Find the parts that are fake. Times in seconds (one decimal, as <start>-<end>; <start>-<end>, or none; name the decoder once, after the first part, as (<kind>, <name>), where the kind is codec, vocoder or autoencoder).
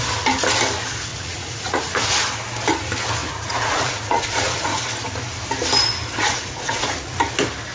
1.1-2.2 (vocoder, Vocos); 3.2-4.8; 6.2-7.2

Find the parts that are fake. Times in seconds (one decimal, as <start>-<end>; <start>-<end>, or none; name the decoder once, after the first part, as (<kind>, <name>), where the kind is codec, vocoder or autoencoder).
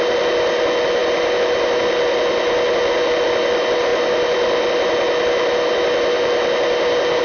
none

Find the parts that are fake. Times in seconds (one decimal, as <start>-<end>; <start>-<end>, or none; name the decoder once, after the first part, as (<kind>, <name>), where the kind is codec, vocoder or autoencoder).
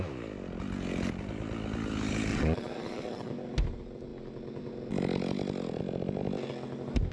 2.3-3.3 (vocoder, Vocos)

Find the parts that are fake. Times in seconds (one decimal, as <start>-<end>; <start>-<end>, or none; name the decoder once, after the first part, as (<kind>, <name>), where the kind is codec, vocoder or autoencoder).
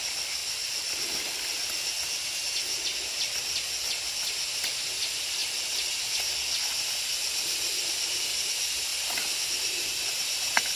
none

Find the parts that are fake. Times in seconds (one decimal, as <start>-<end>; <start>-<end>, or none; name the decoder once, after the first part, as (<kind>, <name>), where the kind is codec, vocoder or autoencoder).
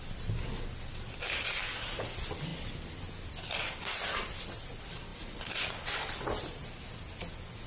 none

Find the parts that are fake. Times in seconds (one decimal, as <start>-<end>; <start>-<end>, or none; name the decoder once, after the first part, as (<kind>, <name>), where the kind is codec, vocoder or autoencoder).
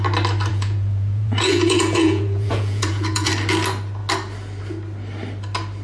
0.5-3.3 (vocoder, Vocos)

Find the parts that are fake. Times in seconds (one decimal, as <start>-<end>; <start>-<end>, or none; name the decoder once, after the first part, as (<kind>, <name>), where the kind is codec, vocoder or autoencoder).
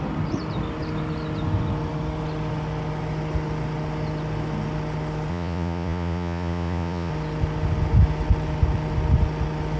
5.3-7.1 (vocoder, Vocos)